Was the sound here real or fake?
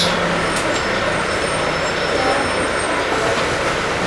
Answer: real